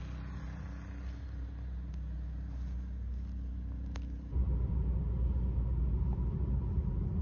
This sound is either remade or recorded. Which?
recorded